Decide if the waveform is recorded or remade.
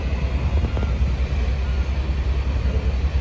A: recorded